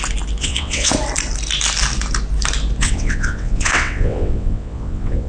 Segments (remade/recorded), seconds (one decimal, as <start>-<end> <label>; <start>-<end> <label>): 0.0-0.4 recorded; 0.4-0.9 remade; 0.9-2.8 recorded; 2.8-5.3 remade